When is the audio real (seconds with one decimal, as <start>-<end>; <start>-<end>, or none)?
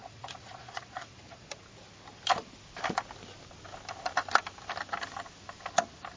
1.6-6.2